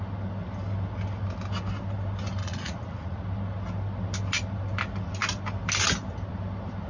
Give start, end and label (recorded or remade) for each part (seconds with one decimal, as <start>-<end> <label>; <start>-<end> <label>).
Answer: 0.0-2.4 recorded; 2.4-3.2 remade; 3.2-6.9 recorded